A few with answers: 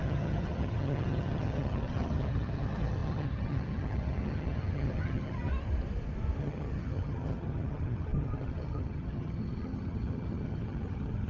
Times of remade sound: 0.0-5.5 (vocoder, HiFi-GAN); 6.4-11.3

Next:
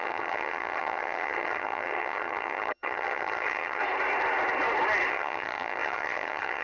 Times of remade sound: 0.0-3.8 (vocoder, HiFi-GAN); 5.1-6.6

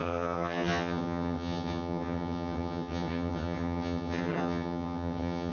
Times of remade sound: 0.0-5.5 (vocoder, HiFi-GAN)

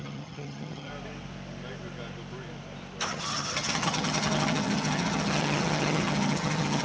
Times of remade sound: 0.0-0.9 (vocoder, HiFi-GAN); 3.1-6.8

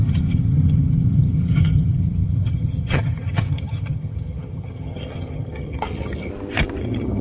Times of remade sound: 0.0-6.3 (vocoder, HiFi-GAN); 6.8-7.2

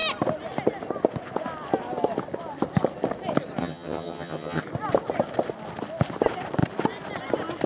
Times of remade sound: 3.6-4.6 (vocoder, HiFi-GAN)

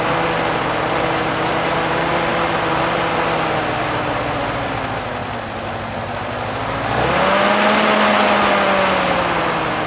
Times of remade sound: none

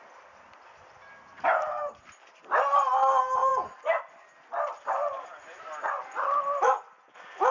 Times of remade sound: none